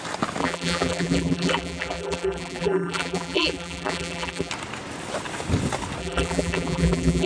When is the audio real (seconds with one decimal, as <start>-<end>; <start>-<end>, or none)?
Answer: 0.0-0.4; 4.5-6.0